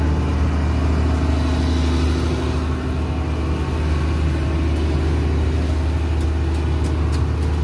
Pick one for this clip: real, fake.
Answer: real